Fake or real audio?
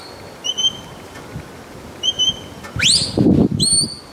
real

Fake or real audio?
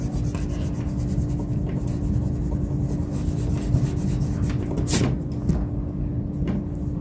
real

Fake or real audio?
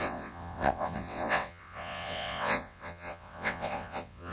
fake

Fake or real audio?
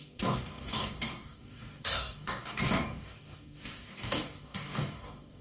fake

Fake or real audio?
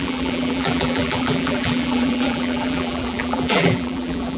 fake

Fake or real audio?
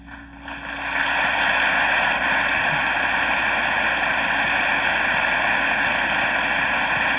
real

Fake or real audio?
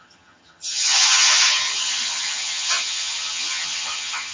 fake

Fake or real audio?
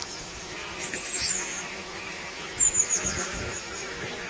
fake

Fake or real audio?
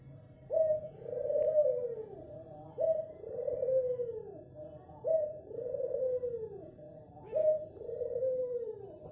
fake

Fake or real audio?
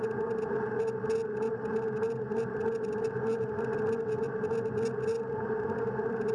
real